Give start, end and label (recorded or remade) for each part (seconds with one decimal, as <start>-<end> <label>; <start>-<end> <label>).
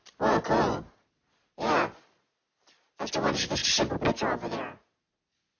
0.0-5.6 recorded